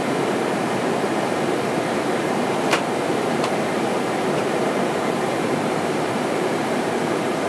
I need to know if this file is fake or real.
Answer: fake